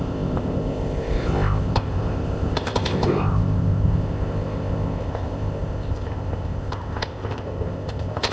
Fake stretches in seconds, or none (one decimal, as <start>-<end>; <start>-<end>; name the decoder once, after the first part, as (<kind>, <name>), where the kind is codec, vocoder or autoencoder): 0.0-8.3 (codec, ZipCodec)